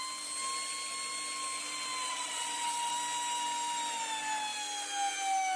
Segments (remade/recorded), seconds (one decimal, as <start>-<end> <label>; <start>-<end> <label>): 0.0-2.1 recorded; 2.1-2.9 remade; 2.9-5.6 recorded